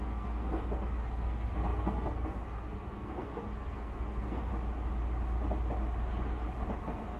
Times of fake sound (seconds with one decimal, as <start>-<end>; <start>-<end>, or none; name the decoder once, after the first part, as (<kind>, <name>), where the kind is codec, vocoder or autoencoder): 0.0-4.5 (codec, SNAC); 6.8-7.2